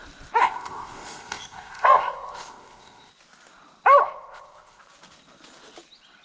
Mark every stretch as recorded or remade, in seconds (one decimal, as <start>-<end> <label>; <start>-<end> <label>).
0.0-0.4 recorded; 0.4-3.1 remade; 3.1-4.0 recorded; 4.0-4.8 remade; 4.8-6.2 recorded